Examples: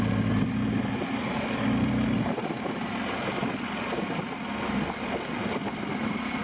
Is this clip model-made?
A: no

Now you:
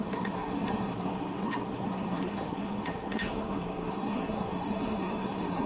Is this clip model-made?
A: yes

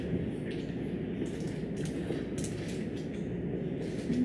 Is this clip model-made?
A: no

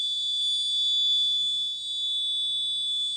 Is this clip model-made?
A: no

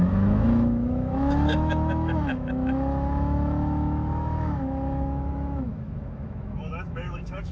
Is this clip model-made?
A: yes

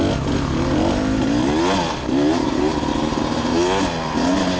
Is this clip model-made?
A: no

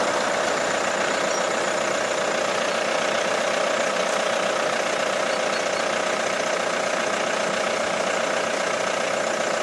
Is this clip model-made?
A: no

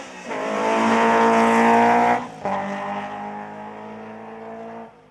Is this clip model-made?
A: no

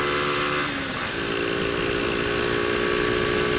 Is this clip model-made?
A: no